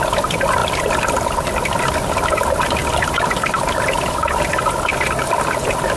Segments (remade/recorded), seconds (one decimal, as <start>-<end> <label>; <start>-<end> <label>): 0.0-0.6 recorded; 0.6-1.8 remade; 1.8-2.8 recorded; 2.8-4.5 remade; 4.5-4.9 recorded; 4.9-6.0 remade